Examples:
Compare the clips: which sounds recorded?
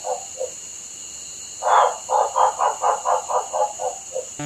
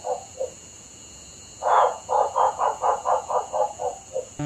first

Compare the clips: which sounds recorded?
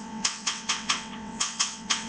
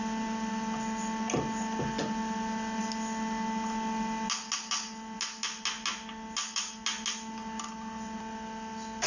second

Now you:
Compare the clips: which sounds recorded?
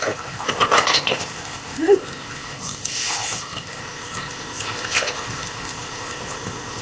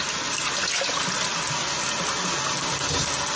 second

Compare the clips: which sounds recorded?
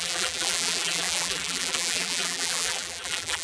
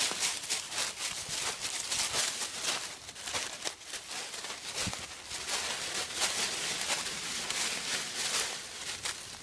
second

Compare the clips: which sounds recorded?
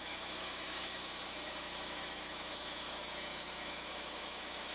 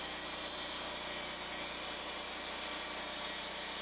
second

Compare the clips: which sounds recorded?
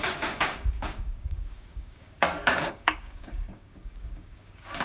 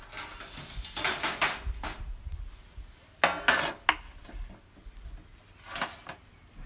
second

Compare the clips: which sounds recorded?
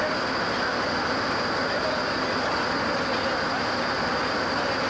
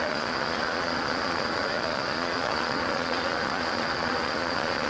first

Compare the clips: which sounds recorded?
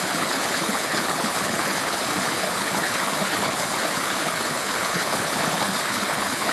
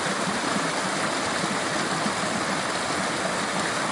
second